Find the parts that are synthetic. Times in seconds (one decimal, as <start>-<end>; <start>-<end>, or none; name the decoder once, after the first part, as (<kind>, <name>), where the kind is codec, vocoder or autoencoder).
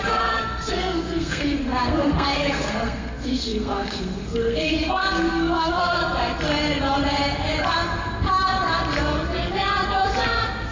0.0-6.0 (codec, SNAC)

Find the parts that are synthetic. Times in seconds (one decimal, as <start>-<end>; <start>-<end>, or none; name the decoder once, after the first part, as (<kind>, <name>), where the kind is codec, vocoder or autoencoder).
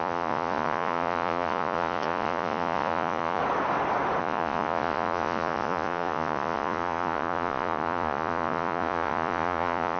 0.0-3.4 (vocoder, Vocos); 4.2-10.0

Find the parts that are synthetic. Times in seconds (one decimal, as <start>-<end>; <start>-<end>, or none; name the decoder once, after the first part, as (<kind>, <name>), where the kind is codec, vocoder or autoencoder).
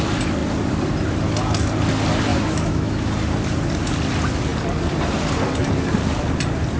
2.3-3.1 (autoencoder, DAC-VAE)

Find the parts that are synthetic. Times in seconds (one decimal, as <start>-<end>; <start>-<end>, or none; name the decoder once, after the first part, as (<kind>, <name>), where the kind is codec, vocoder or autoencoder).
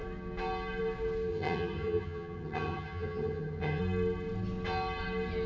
1.3-3.8 (vocoder, HiFi-GAN)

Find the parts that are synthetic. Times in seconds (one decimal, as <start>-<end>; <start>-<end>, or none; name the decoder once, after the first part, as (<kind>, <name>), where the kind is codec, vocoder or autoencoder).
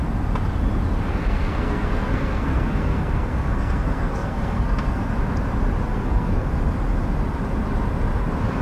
1.1-5.0 (codec, SNAC); 5.9-6.5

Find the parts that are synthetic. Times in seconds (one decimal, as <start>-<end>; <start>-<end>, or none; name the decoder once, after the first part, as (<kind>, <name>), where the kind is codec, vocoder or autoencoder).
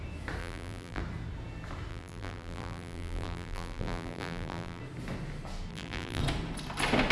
0.4-1.0 (vocoder, BigVGAN v2); 1.9-4.8; 5.7-6.2